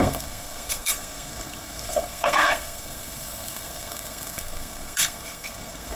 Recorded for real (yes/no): no